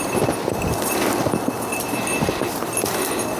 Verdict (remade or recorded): remade